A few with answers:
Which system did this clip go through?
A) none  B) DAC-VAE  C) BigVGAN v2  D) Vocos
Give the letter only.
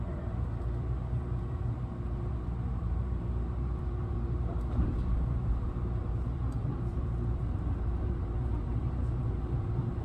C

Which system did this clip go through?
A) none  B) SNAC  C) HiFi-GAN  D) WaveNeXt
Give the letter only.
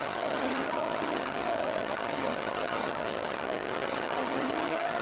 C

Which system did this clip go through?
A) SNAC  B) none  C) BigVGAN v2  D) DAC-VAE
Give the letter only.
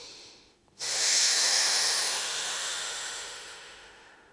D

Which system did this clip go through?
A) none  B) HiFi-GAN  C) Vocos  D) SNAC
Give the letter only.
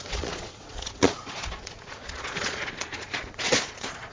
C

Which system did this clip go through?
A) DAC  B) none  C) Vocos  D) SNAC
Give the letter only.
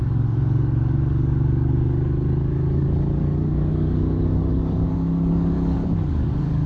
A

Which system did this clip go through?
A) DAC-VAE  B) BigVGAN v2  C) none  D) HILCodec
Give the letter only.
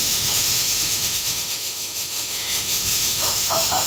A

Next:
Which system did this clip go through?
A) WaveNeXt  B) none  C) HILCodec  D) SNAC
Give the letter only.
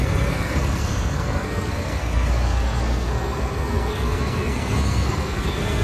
D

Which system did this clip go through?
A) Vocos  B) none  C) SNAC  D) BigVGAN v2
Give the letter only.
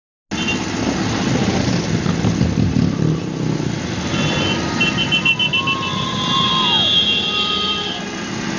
B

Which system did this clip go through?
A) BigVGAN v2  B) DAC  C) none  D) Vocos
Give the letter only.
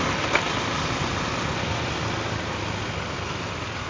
C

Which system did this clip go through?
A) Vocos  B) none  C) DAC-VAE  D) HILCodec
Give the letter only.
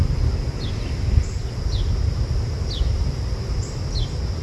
B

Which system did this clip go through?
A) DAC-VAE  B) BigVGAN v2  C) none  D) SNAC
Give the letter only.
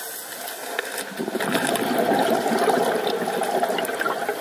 C